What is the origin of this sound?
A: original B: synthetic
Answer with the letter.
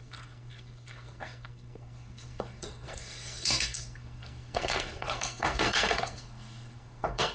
B